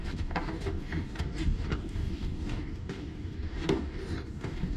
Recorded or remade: remade